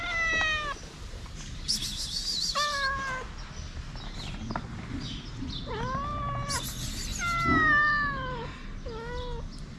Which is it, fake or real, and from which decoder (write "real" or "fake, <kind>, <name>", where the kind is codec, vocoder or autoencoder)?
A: real